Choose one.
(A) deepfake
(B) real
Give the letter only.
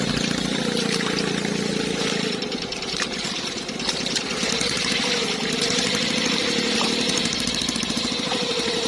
A